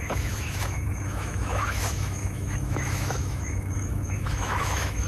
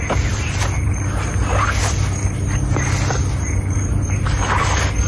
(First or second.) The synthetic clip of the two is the first